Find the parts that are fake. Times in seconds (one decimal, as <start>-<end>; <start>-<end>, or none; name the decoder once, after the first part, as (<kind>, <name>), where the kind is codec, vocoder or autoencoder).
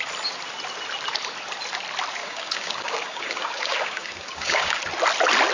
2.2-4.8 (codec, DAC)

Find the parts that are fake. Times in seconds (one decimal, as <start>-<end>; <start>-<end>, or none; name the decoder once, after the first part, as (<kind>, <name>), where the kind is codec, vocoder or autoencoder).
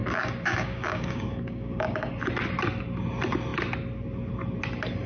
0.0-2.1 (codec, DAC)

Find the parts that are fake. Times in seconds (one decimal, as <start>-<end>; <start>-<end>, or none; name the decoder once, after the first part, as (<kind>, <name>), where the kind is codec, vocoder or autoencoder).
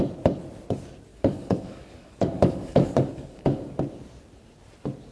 1.1-3.7 (codec, DAC)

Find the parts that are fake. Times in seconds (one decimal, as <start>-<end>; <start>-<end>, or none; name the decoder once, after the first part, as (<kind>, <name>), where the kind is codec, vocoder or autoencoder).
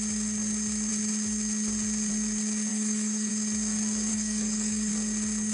2.7-3.3 (codec, DAC); 4.1-4.9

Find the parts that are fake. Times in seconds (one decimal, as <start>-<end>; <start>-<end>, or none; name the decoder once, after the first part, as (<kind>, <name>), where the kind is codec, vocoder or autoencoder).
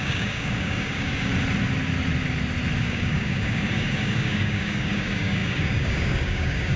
0.0-1.3 (codec, DAC); 2.8-6.8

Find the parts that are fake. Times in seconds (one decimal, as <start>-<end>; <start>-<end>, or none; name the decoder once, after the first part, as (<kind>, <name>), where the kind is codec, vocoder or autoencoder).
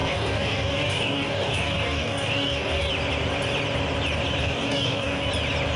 0.0-2.9 (codec, DAC); 4.4-5.3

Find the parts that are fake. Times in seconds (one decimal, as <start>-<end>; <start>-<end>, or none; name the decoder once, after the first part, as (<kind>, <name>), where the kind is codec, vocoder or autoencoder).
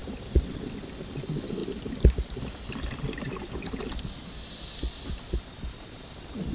none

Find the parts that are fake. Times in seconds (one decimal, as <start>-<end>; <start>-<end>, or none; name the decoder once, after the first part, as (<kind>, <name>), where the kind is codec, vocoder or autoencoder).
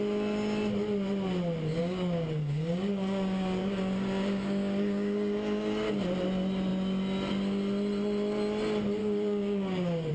1.8-5.9 (codec, DAC); 9.0-10.1